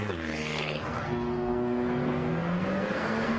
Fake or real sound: fake